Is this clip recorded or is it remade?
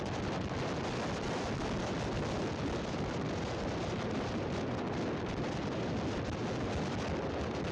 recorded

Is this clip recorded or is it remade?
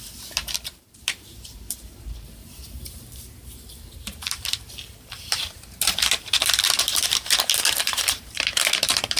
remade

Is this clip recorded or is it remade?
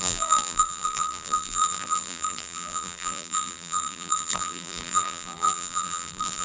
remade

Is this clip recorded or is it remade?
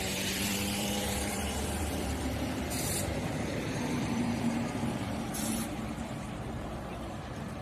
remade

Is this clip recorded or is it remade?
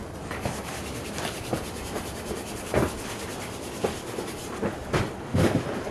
recorded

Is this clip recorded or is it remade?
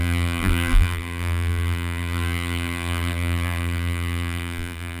remade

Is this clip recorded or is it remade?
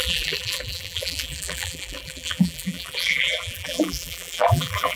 remade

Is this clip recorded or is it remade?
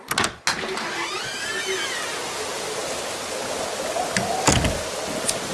recorded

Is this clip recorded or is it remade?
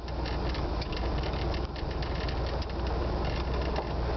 recorded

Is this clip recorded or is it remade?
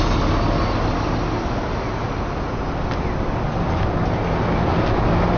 recorded